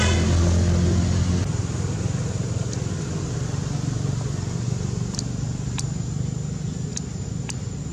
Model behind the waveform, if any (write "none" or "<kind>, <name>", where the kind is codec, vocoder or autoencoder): none